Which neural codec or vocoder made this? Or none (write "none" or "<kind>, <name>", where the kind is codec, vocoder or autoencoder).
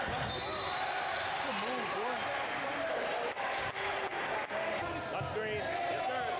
none